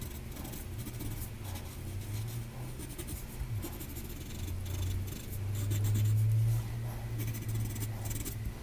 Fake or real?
real